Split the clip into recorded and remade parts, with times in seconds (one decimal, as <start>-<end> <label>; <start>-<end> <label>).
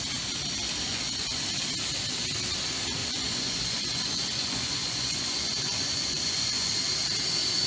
0.0-0.9 recorded; 0.9-1.4 remade; 1.4-3.0 recorded; 3.0-6.7 remade; 6.7-7.7 recorded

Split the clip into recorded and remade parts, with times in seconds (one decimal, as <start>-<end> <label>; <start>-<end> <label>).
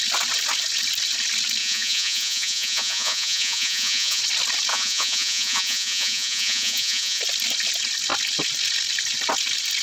0.0-1.6 recorded; 1.6-4.2 remade; 4.2-4.7 recorded; 4.7-7.2 remade; 7.2-9.8 recorded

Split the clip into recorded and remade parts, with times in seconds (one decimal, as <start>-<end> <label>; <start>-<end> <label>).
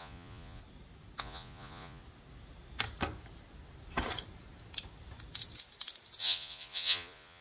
0.0-0.6 remade; 0.6-1.2 recorded; 1.2-2.0 remade; 2.0-6.2 recorded; 6.2-7.4 remade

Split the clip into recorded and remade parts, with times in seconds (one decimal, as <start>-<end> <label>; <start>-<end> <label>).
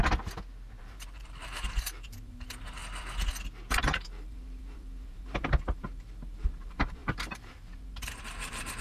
0.0-0.8 recorded; 0.8-2.8 remade; 2.8-3.8 recorded; 3.8-8.8 remade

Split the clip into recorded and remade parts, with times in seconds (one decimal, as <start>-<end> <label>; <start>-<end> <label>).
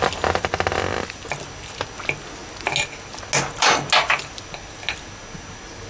0.0-5.9 recorded